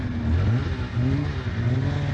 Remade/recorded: recorded